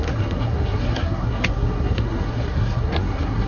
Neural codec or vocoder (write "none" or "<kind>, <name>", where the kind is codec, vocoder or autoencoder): codec, SNAC